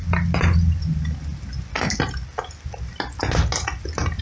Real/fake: real